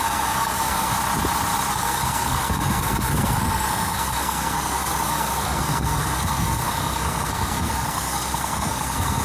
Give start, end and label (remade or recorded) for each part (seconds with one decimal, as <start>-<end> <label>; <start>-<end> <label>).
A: 0.0-0.9 remade; 0.9-1.7 recorded; 1.7-9.2 remade